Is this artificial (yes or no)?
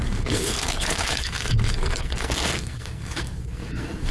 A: yes